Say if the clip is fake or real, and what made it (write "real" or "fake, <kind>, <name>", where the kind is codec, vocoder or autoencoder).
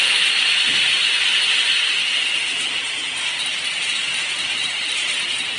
fake, vocoder, BigVGAN v2